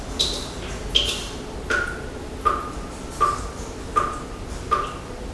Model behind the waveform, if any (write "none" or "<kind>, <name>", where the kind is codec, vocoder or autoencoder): none